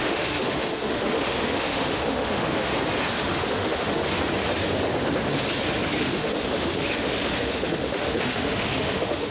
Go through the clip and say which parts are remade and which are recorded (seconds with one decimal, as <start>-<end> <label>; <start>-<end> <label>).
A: 0.0-2.7 remade; 2.7-3.2 recorded; 3.2-4.0 remade; 4.0-6.0 recorded; 6.0-9.3 remade